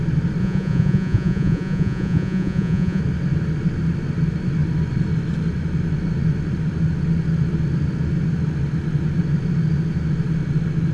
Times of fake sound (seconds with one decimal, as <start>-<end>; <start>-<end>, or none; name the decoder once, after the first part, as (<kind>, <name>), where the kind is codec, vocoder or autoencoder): 0.4-3.0 (vocoder, Vocos)